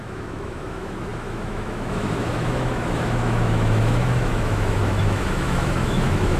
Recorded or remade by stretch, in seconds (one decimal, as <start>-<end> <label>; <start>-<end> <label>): 0.0-6.4 remade